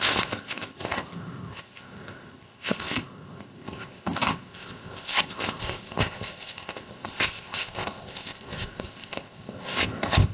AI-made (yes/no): yes